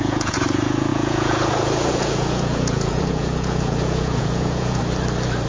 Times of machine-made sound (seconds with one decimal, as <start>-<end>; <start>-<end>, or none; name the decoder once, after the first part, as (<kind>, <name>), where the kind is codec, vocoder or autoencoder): 0.0-4.8 (vocoder, Vocos)